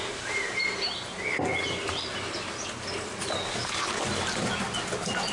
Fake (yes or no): no